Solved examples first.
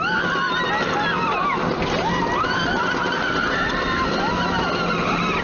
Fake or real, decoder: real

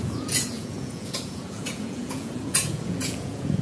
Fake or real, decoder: fake, vocoder, Vocos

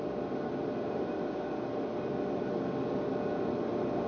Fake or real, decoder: real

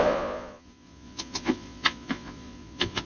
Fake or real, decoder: fake, vocoder, Vocos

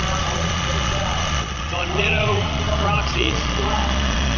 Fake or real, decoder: fake, vocoder, Vocos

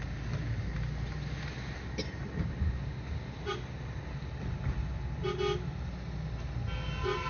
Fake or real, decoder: real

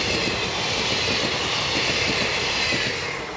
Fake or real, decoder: real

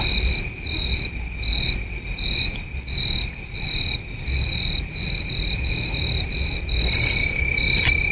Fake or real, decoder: real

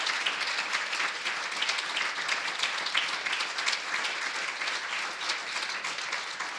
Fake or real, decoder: real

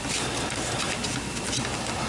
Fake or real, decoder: real